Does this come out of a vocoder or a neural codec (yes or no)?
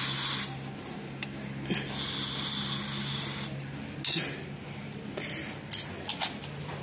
no